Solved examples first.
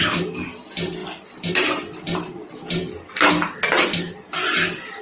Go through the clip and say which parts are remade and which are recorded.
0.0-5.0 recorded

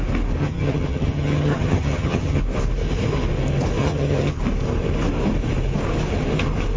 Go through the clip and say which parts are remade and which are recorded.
0.0-0.4 recorded; 0.4-2.4 remade; 2.4-3.8 recorded; 3.8-4.4 remade; 4.4-6.8 recorded